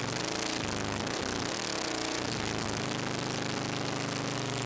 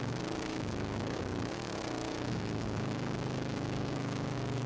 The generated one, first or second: second